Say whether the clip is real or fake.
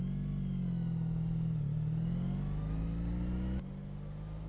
real